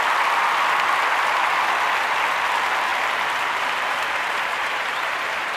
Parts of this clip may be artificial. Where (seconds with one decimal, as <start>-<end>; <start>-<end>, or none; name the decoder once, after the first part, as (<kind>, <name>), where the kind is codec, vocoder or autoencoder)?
2.9-5.6 (vocoder, BigVGAN v2)